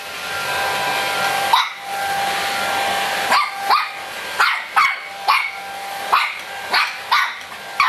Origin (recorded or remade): recorded